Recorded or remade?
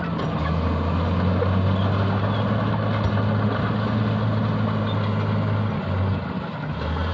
recorded